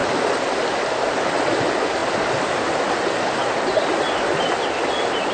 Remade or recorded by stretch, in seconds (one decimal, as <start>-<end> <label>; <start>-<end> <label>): 0.0-5.3 recorded